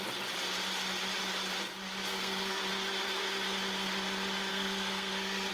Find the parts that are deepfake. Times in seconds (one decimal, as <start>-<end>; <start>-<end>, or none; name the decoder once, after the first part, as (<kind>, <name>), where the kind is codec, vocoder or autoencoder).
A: 2.1-2.7 (codec, SNAC); 4.5-5.5